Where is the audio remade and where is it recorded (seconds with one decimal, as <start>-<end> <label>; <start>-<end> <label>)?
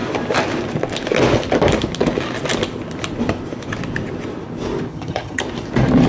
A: 0.0-4.9 recorded; 4.9-5.4 remade; 5.4-6.1 recorded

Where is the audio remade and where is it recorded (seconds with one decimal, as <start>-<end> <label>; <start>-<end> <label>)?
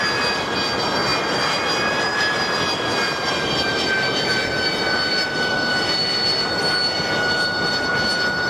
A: 0.0-8.5 recorded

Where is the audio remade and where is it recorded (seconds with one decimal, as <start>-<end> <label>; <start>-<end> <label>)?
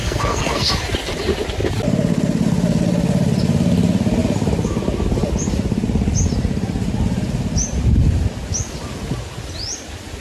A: 0.0-0.7 remade; 0.7-10.2 recorded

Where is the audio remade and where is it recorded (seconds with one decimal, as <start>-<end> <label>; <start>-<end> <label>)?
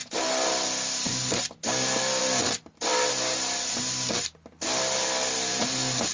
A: 0.0-6.1 recorded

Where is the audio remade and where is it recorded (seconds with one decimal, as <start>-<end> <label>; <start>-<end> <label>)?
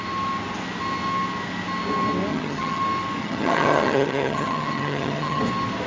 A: 0.0-2.3 recorded; 2.3-2.8 remade; 2.8-3.2 recorded; 3.2-5.4 remade; 5.4-5.9 recorded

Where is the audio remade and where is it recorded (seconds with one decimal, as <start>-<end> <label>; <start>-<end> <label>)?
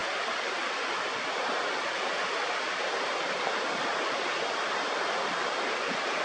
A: 0.0-6.2 recorded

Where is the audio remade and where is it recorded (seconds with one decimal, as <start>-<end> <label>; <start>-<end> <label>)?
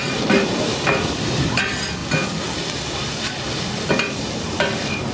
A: 0.0-2.0 remade; 2.0-3.9 recorded; 3.9-5.1 remade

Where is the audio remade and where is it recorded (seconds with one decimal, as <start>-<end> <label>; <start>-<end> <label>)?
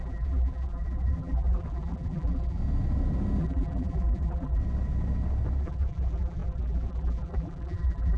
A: 0.0-2.6 remade; 2.6-3.4 recorded; 3.4-4.6 remade; 4.6-5.6 recorded; 5.6-8.2 remade